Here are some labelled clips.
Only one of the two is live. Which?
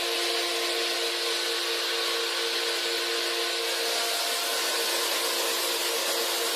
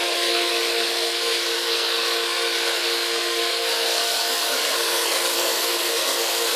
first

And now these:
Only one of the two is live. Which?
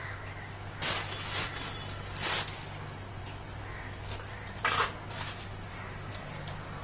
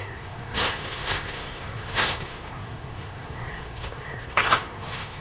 first